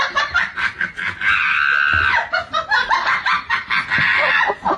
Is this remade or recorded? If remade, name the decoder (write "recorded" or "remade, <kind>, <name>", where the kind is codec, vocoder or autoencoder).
recorded